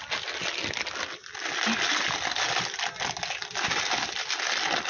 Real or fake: real